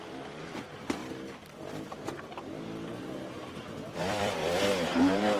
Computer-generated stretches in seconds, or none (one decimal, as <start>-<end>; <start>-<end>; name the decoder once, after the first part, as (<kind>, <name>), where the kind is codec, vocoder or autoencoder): 0.0-1.0 (vocoder, BigVGAN v2); 4.0-4.4; 5.0-5.4